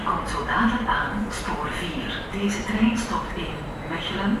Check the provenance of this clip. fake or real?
fake